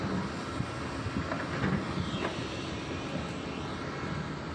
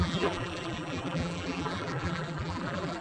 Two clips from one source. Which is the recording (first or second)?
first